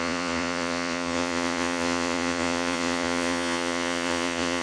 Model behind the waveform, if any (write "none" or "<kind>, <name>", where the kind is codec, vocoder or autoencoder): vocoder, Vocos